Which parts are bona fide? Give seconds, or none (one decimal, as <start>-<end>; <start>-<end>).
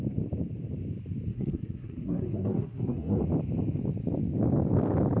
0.0-1.3; 3.2-5.2